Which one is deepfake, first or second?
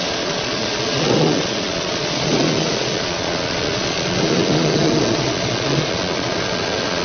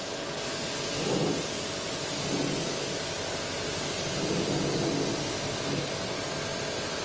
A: first